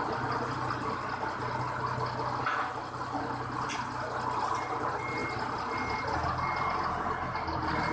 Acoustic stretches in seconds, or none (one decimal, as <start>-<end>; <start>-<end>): 0.0-7.9